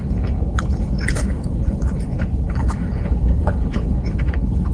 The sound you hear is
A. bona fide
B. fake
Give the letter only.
B